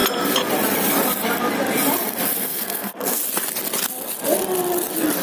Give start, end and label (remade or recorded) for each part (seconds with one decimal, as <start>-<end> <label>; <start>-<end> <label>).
0.0-2.4 recorded; 2.4-3.2 remade; 3.2-5.2 recorded